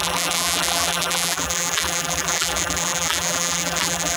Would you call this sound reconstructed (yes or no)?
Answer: yes